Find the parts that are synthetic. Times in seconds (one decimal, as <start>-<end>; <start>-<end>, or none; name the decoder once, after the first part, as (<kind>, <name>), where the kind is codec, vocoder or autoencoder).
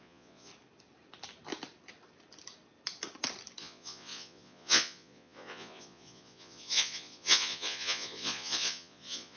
0.0-0.5 (vocoder, Vocos); 3.6-9.4